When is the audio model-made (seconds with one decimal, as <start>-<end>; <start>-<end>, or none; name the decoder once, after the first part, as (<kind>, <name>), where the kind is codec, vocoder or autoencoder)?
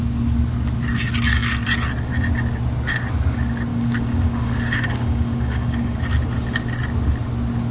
3.7-6.0 (codec, DAC)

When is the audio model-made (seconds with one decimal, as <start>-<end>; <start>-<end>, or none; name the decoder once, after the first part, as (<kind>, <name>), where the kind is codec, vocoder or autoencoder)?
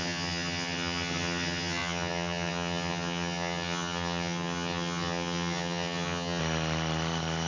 0.0-6.4 (vocoder, HiFi-GAN)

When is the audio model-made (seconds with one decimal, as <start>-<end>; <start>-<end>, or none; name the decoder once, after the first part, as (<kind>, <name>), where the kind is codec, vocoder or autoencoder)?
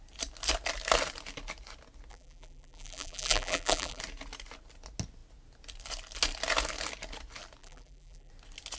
2.1-4.0 (vocoder, BigVGAN v2); 7.6-8.3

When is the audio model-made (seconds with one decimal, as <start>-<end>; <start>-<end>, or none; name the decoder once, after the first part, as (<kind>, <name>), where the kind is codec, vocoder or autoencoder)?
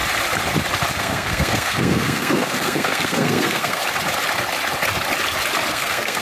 1.0-3.8 (codec, SNAC); 5.7-6.2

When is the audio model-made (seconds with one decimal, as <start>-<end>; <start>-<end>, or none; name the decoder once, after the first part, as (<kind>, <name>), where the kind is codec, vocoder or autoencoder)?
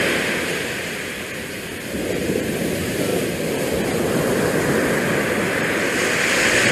none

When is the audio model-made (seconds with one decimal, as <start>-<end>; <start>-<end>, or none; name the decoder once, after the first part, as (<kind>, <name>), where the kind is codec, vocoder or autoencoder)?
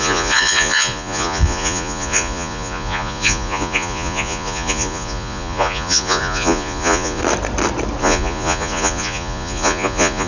0.0-7.2 (vocoder, Vocos); 8.0-10.3